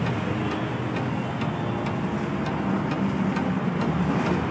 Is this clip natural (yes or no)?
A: yes